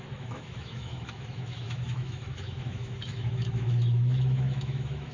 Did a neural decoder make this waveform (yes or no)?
yes